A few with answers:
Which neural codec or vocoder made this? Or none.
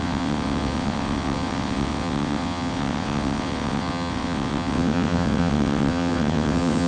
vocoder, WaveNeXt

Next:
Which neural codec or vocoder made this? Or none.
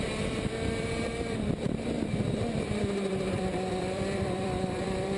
vocoder, BigVGAN v2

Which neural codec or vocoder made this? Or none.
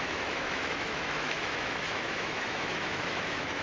autoencoder, DAC-VAE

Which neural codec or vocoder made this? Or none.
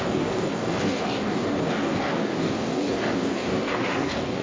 codec, DAC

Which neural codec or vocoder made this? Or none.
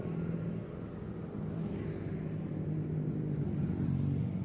none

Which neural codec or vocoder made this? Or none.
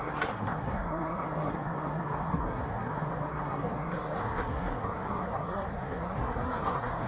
codec, SNAC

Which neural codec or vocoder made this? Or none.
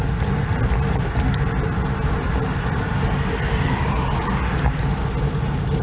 none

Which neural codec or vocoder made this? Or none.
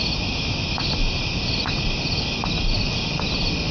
none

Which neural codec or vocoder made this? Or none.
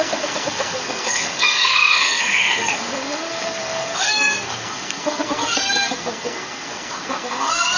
codec, SNAC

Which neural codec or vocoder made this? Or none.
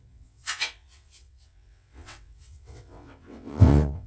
vocoder, WaveNeXt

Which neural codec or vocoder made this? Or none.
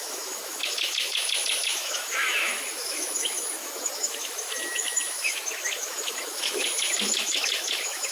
autoencoder, DAC-VAE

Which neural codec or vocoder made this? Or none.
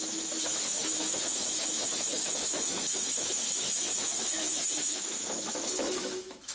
autoencoder, DAC-VAE